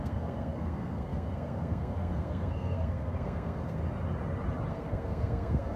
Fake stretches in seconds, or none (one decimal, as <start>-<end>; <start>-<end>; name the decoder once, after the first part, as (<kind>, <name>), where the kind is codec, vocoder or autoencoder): 0.0-3.8 (codec, SNAC); 4.7-5.8